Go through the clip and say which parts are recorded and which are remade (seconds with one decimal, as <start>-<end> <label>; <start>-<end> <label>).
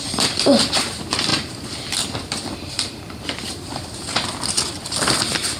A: 0.0-5.6 recorded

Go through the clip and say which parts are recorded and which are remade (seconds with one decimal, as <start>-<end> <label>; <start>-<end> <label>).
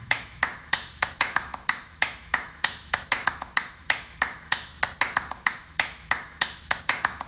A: 0.0-4.7 remade; 4.7-5.3 recorded; 5.3-7.3 remade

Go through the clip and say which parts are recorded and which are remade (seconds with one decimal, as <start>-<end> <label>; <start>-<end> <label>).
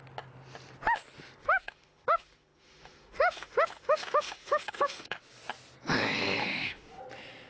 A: 0.0-1.4 recorded; 1.4-5.2 remade; 5.2-6.4 recorded; 6.4-7.0 remade; 7.0-7.5 recorded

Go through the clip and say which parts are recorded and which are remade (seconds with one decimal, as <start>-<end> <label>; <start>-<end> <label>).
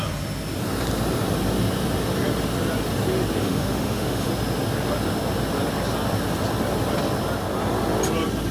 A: 0.0-3.4 recorded; 3.4-4.3 remade; 4.3-8.5 recorded